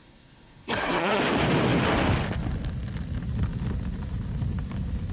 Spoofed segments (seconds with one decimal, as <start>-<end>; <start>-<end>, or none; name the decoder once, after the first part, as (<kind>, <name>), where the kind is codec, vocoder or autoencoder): 0.0-1.2 (codec, SNAC)